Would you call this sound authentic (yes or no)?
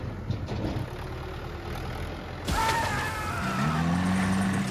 yes